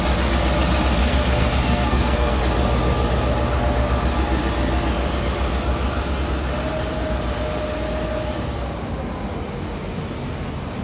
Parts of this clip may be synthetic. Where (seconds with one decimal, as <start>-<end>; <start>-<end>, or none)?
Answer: 1.0-2.4